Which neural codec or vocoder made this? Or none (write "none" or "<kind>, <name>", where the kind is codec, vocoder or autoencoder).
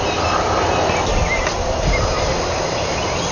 none